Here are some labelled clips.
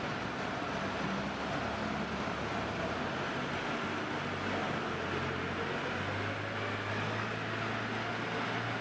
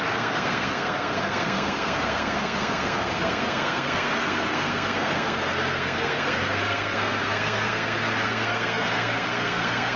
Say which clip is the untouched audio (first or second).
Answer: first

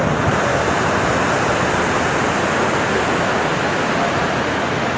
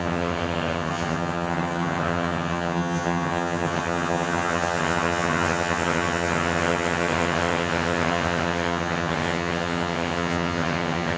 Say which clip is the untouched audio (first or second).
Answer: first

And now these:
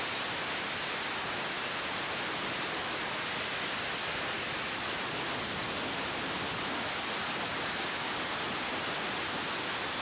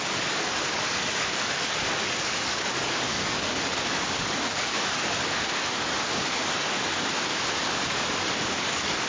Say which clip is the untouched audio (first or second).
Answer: first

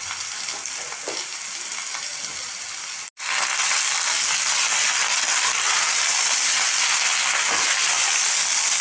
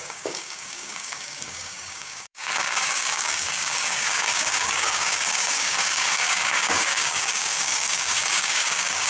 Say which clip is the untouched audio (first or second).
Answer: first